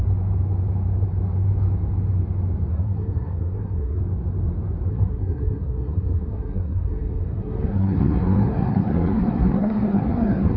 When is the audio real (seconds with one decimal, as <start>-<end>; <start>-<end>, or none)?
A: 0.0-2.7; 4.0-4.9